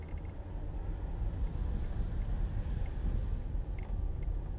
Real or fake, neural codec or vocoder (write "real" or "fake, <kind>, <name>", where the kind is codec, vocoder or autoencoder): real